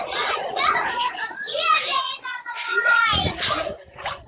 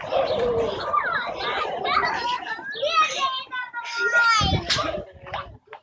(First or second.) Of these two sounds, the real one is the second